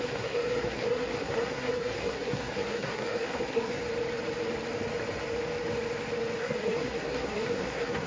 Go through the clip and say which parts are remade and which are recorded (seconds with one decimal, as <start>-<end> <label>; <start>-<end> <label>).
0.0-3.8 remade; 3.8-6.4 recorded; 6.4-8.1 remade

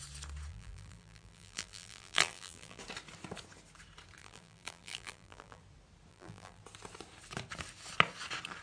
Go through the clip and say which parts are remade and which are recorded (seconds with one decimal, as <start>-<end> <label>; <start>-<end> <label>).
0.0-0.5 recorded; 0.5-2.8 remade; 2.8-4.2 recorded; 4.2-5.6 remade; 5.6-6.1 recorded; 6.1-6.6 remade; 6.6-8.6 recorded

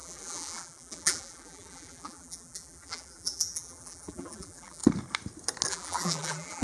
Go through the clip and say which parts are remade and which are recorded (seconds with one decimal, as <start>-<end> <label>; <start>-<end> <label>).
0.0-4.8 remade; 4.8-5.7 recorded; 5.7-6.6 remade

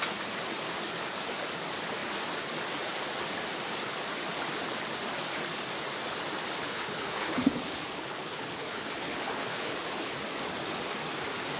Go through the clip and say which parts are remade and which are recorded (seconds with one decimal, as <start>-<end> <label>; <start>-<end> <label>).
0.0-6.6 recorded; 6.6-10.2 remade; 10.2-11.6 recorded

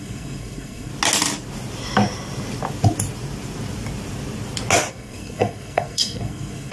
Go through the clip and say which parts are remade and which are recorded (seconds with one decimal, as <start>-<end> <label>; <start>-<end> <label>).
0.0-0.9 remade; 0.9-4.9 recorded; 4.9-6.7 remade

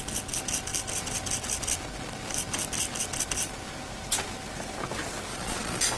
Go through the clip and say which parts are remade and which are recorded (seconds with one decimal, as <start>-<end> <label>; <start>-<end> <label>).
0.0-5.3 recorded; 5.3-6.0 remade

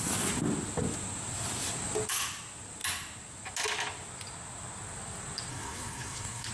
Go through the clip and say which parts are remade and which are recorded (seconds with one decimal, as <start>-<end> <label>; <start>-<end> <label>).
0.0-5.5 recorded; 5.5-6.5 remade